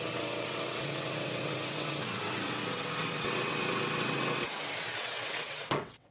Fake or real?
fake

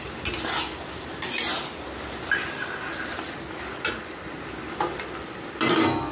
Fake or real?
real